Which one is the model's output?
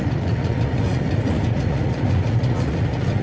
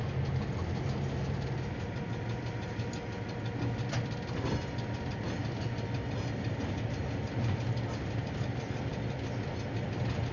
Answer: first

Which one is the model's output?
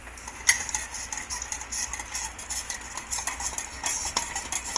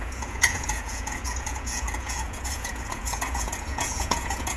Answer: second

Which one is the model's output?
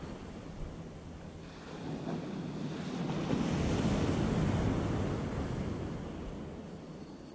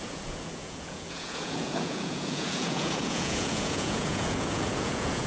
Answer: second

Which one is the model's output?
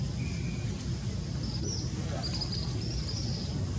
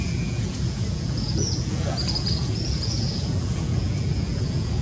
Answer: second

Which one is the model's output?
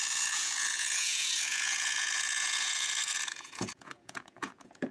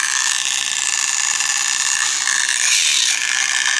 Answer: first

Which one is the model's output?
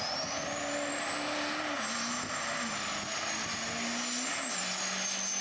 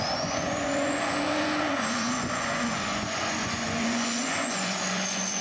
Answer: second